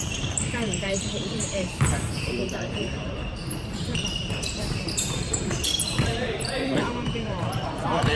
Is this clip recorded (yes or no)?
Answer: no